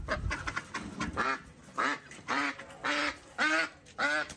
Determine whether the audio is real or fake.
real